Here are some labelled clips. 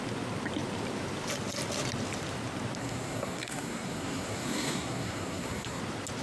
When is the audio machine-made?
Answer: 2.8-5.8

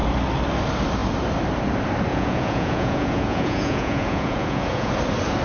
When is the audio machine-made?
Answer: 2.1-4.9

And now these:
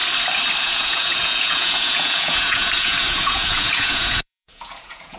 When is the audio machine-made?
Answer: 0.6-5.2

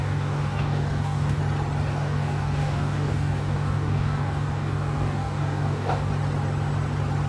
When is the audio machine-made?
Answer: 0.0-1.4; 1.9-6.1